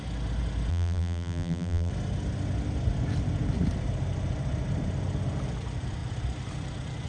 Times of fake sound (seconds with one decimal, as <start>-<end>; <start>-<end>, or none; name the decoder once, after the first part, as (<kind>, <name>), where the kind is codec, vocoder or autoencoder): 0.7-1.9 (vocoder, BigVGAN v2)